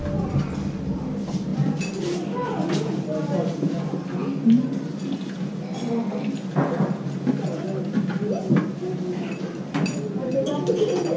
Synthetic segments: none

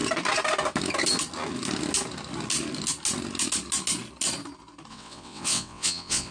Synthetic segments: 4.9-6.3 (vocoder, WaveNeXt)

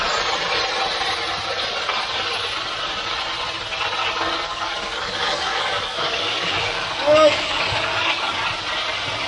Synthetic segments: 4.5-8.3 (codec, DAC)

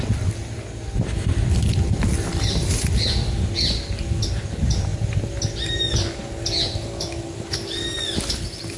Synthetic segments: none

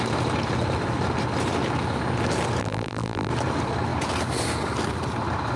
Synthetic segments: 2.6-3.3 (vocoder, BigVGAN v2)

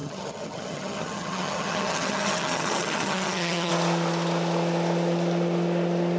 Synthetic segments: 0.0-3.7 (vocoder, HiFi-GAN)

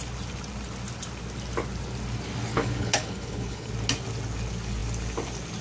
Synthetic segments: 2.5-3.7 (codec, HILCodec)

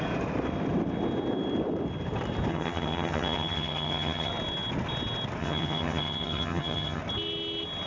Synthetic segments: 2.5-4.3 (vocoder, HiFi-GAN); 5.4-7.0